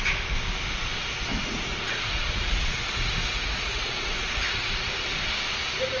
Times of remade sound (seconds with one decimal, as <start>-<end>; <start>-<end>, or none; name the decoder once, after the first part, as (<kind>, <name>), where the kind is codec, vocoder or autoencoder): 1.3-4.9 (vocoder, Vocos)